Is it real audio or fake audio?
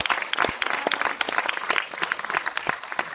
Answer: real